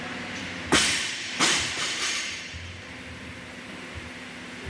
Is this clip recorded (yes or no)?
no